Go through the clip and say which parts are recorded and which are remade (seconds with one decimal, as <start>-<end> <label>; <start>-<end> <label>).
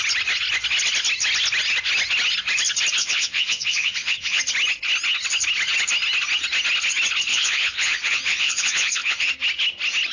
0.0-3.0 recorded; 3.0-4.4 remade; 4.4-7.3 recorded; 7.3-9.3 remade; 9.3-10.1 recorded